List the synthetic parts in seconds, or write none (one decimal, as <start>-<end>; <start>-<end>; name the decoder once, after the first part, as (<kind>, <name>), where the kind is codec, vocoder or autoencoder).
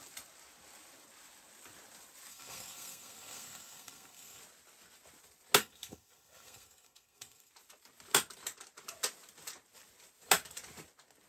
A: 2.3-4.4 (codec, SNAC); 5.6-7.5